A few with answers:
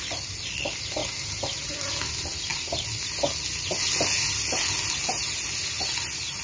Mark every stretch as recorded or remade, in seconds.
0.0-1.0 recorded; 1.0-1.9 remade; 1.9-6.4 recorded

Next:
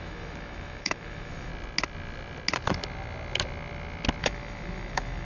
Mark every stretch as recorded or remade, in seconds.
0.0-1.5 remade; 1.5-4.2 recorded; 4.2-5.2 remade

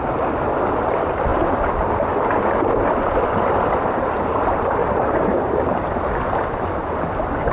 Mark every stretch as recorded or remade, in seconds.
0.0-4.8 recorded; 4.8-5.4 remade; 5.4-7.5 recorded

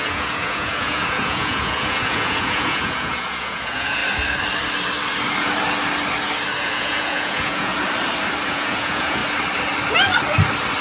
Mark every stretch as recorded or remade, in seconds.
0.0-4.0 remade; 4.0-6.6 recorded; 6.6-7.7 remade; 7.7-8.5 recorded; 8.5-9.2 remade; 9.2-10.8 recorded

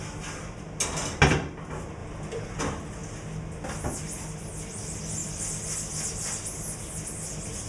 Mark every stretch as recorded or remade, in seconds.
0.0-7.7 recorded

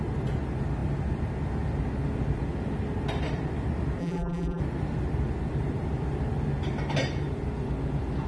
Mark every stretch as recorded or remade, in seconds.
0.0-4.0 recorded; 4.0-4.6 remade; 4.6-8.3 recorded